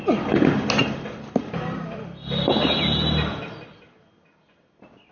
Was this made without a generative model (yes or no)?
yes